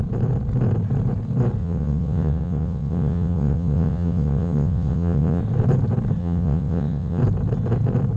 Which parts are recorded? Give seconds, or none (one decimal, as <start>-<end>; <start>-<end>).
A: 0.0-1.6; 5.4-6.2; 7.2-8.2